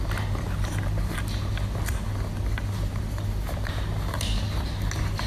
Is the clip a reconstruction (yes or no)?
no